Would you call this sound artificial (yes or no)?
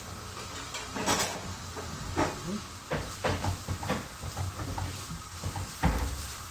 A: no